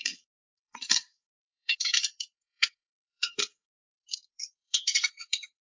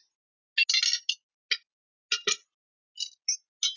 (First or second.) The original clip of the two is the second